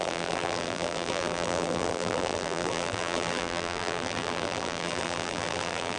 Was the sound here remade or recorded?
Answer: remade